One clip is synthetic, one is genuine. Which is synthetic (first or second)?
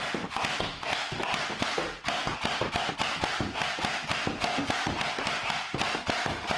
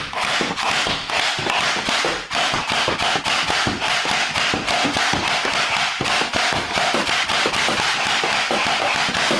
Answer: second